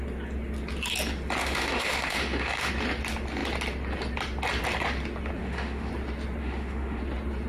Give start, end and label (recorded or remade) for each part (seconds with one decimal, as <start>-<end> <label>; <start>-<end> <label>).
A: 0.0-1.4 recorded; 1.4-2.7 remade; 2.7-5.4 recorded; 5.4-5.9 remade; 5.9-6.4 recorded; 6.4-7.0 remade; 7.0-7.5 recorded